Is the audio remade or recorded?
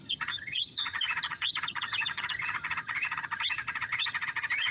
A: remade